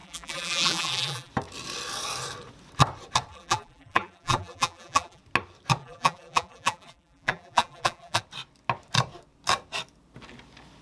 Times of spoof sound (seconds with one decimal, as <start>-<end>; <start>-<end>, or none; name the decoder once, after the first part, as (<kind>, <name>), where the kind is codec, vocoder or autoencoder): 0.0-1.3 (vocoder, BigVGAN v2); 3.3-5.2; 5.8-8.2